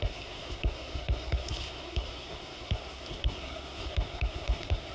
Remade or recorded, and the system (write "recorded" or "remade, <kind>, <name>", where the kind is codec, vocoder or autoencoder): remade, codec, SNAC